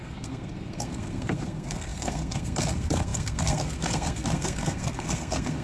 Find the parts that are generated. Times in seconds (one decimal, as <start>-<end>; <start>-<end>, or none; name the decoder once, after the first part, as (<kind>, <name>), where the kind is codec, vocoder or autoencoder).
0.0-5.6 (codec, SNAC)